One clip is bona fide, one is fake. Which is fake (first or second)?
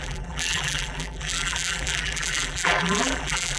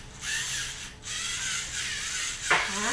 first